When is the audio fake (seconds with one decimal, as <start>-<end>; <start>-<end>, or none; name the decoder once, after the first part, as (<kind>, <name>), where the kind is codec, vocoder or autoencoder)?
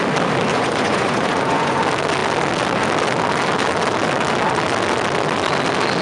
0.5-1.8 (vocoder, Vocos)